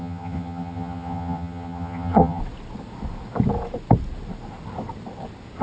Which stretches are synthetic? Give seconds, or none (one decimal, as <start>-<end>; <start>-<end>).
0.0-2.4